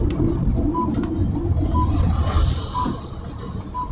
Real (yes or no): yes